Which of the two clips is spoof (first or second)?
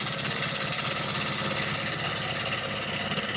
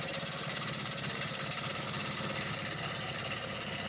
second